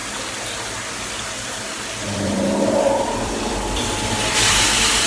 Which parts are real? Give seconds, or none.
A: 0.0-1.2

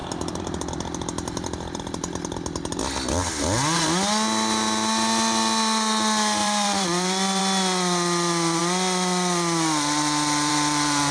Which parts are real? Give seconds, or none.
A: 1.5-6.4; 7.4-11.1

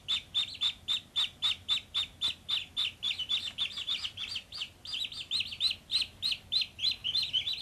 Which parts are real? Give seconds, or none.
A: 0.0-7.0

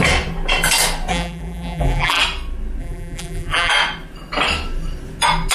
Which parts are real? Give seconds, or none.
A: 0.0-1.1; 2.2-2.8; 3.7-5.5

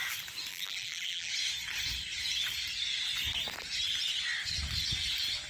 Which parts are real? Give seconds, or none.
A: 0.0-0.5; 1.3-5.5

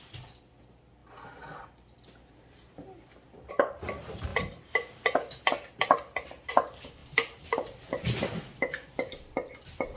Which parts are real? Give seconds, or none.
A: 4.3-6.5; 7.0-8.0